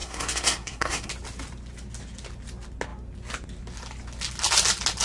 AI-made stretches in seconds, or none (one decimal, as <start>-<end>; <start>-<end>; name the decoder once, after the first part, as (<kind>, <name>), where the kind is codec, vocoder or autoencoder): 0.0-1.1 (codec, SNAC)